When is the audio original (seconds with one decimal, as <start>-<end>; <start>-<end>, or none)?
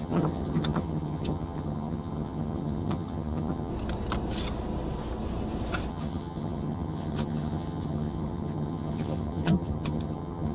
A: 3.7-5.9